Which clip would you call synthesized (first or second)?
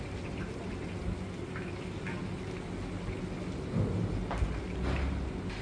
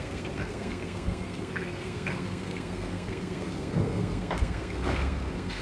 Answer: second